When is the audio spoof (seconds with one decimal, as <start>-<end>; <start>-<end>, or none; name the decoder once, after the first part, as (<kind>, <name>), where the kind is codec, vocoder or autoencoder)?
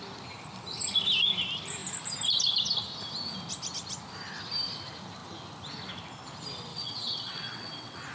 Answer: 6.7-8.1 (vocoder, WaveNeXt)